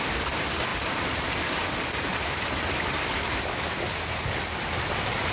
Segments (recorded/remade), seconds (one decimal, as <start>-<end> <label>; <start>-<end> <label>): 0.0-5.3 recorded